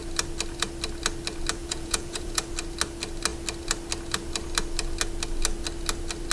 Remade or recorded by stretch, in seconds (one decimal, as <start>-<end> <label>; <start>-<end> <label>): 0.0-1.6 recorded; 1.6-2.5 remade; 2.5-6.3 recorded